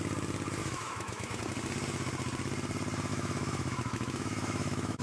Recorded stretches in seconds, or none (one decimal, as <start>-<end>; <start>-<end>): 0.0-0.6; 1.4-3.1